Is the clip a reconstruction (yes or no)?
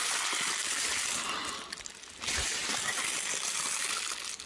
no